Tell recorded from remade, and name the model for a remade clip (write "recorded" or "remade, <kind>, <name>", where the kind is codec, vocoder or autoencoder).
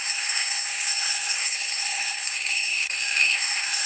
remade, codec, SNAC